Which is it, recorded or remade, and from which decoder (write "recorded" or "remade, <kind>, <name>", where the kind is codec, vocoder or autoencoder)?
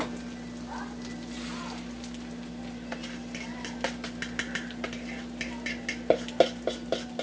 recorded